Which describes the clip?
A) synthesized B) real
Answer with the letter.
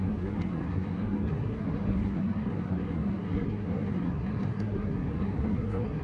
A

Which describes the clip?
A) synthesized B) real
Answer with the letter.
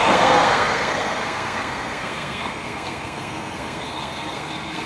A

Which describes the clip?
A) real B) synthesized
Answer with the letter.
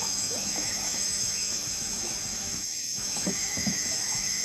B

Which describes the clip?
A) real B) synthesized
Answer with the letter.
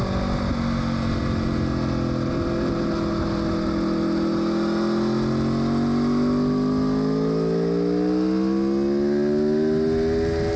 A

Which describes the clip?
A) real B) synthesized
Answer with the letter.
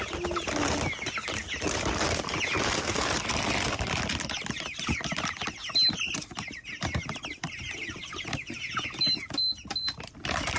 A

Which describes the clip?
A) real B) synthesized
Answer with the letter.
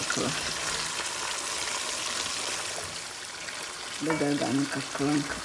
A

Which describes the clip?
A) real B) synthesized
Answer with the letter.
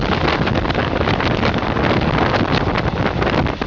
A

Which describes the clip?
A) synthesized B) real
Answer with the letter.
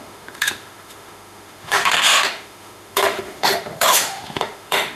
A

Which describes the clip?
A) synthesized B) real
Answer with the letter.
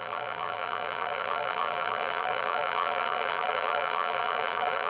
A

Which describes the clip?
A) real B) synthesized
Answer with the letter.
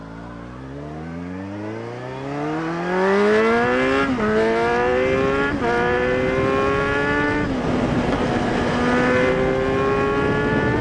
A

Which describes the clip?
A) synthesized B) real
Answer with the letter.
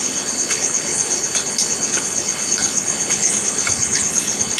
A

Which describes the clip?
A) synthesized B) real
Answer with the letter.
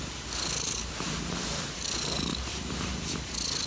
A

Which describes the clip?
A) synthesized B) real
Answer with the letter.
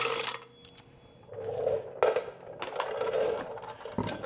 B